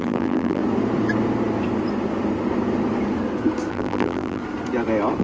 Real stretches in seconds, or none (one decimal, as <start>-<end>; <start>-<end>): 0.6-3.7; 4.4-5.2